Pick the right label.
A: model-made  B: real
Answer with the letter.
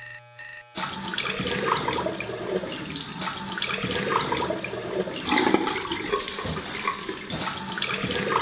B